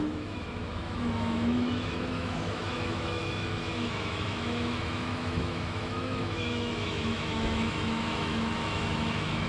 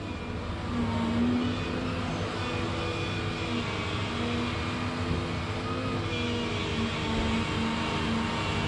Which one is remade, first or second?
first